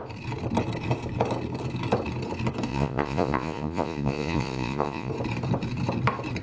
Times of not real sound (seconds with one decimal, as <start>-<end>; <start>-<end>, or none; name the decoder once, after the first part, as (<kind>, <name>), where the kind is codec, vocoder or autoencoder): 2.7-5.1 (vocoder, Vocos)